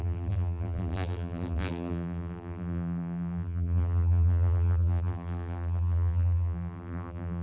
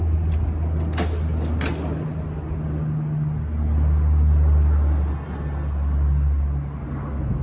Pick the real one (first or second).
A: second